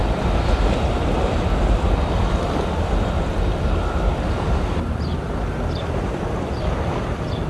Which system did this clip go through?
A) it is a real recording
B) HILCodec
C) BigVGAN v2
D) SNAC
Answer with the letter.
C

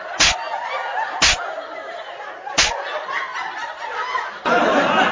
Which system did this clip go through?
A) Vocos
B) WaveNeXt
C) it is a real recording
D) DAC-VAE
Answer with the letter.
C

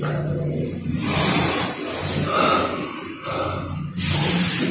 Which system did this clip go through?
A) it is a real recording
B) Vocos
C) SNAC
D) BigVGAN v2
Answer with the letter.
A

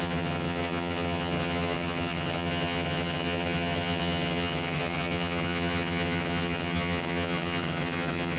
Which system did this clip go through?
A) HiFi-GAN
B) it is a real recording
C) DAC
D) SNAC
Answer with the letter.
A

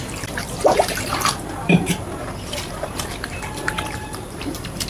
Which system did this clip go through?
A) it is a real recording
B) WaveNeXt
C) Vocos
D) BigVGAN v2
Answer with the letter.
D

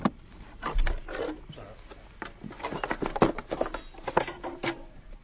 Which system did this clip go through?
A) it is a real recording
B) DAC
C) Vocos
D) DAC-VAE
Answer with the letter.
A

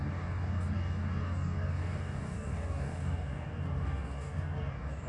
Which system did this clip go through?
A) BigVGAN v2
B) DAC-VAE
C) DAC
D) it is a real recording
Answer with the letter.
C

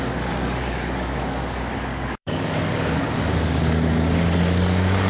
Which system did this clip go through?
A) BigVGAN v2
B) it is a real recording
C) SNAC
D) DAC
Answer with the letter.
D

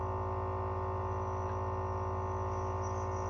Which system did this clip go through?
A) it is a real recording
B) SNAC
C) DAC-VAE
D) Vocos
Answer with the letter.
A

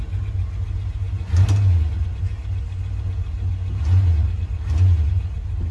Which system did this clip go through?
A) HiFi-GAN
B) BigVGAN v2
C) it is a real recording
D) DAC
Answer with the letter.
C